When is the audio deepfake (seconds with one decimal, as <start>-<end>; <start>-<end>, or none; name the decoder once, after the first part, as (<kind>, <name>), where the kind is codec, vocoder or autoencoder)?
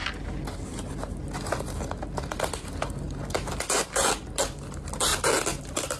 none